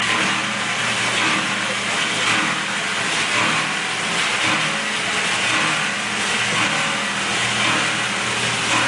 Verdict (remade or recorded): recorded